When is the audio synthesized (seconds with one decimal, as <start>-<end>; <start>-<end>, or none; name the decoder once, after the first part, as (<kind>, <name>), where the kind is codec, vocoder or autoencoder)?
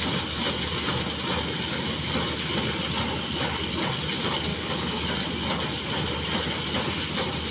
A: 4.5-5.0 (codec, DAC)